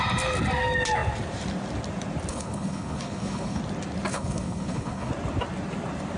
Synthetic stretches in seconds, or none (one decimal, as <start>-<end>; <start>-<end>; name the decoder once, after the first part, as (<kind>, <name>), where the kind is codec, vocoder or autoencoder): 2.3-3.6 (codec, HILCodec); 4.1-5.1